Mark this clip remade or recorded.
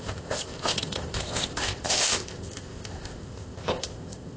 remade